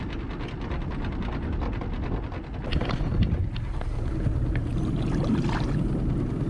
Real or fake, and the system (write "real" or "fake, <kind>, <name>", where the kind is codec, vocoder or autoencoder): real